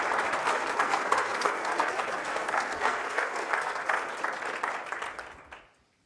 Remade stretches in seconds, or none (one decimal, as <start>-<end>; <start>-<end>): 0.4-4.1